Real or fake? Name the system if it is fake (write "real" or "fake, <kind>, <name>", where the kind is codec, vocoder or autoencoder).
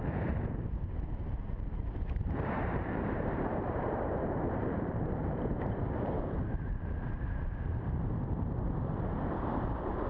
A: fake, vocoder, BigVGAN v2